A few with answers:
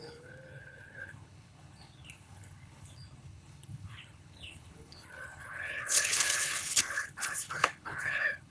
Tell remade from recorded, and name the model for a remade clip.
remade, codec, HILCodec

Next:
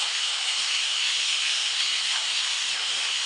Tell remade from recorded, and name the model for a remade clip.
remade, codec, SNAC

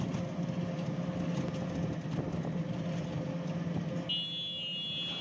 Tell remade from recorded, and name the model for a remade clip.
recorded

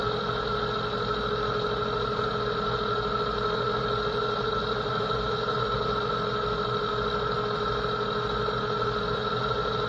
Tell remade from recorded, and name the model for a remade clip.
recorded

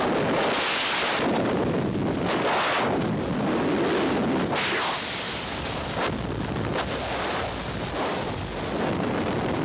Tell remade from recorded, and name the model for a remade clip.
recorded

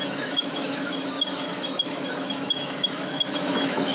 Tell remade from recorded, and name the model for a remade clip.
remade, autoencoder, DAC-VAE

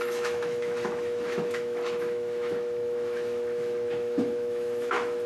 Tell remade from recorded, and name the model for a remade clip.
remade, autoencoder, DAC-VAE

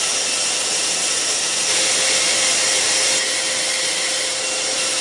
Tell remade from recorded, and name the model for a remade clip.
recorded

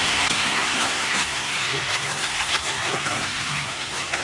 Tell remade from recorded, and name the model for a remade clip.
remade, codec, SNAC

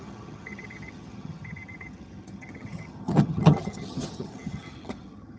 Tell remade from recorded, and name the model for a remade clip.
remade, vocoder, HiFi-GAN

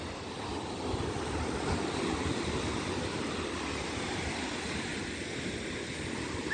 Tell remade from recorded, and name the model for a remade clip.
recorded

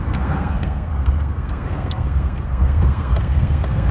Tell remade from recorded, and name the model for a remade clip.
remade, codec, SNAC